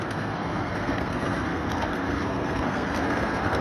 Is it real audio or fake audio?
fake